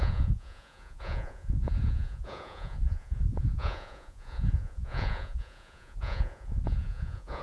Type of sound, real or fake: fake